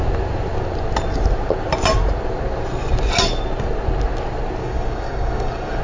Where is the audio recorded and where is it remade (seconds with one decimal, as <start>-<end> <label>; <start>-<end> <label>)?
0.0-4.6 recorded; 4.6-5.8 remade